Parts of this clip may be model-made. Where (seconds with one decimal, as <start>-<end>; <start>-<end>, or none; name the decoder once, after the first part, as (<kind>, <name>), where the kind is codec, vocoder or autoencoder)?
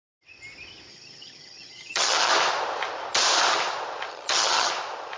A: 0.9-2.3 (vocoder, HiFi-GAN); 4.1-4.7